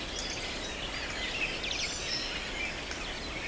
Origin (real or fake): real